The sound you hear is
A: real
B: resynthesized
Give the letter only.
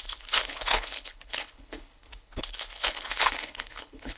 B